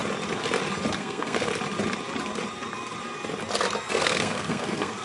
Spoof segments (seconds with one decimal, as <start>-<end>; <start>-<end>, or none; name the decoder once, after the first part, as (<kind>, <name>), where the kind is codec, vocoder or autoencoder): 1.0-1.5 (codec, SNAC); 3.9-5.0